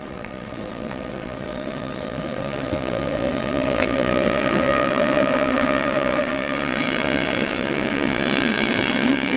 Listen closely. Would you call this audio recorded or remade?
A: remade